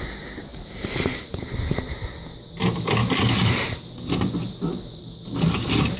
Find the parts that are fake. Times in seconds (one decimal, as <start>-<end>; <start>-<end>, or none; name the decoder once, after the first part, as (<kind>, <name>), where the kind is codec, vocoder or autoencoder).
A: 0.5-1.2 (vocoder, BigVGAN v2); 3.0-3.9

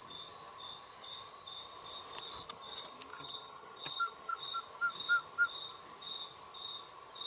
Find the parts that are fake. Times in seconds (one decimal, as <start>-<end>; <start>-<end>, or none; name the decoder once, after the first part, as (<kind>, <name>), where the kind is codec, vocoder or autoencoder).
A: 3.1-4.4 (vocoder, HiFi-GAN)

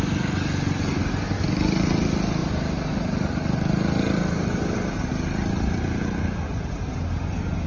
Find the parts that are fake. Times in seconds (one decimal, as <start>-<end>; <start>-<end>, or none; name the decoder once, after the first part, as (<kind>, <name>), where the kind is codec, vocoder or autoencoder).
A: none

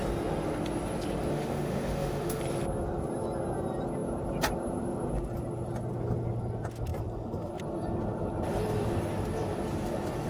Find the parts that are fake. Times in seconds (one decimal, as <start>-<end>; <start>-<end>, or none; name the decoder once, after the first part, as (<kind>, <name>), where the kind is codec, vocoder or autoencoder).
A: 1.3-2.4 (autoencoder, DAC-VAE)

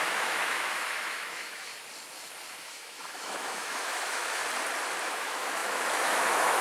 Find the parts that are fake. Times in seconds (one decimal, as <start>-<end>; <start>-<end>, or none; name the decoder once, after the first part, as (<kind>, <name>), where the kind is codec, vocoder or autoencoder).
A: 0.0-1.7 (autoencoder, DAC-VAE); 2.6-4.4; 5.0-6.6

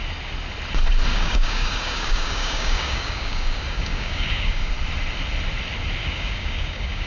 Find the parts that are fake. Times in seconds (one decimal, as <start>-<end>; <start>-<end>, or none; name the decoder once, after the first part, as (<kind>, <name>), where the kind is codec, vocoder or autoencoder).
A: 1.1-4.7 (codec, DAC); 6.0-7.1